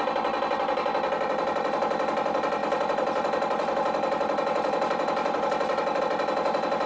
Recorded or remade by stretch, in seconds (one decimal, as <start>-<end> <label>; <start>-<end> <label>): 0.0-2.6 recorded; 2.6-6.0 remade; 6.0-6.9 recorded